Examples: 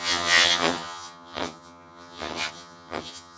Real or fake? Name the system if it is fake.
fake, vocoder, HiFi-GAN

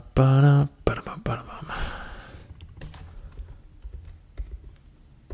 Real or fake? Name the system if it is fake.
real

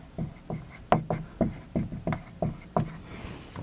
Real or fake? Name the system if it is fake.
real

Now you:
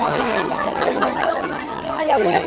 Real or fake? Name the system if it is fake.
fake, vocoder, HiFi-GAN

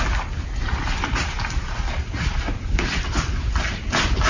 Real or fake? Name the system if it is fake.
real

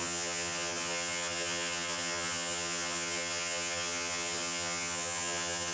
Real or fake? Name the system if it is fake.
fake, vocoder, HiFi-GAN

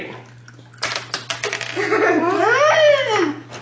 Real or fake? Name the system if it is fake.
real